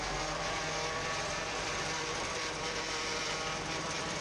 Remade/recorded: remade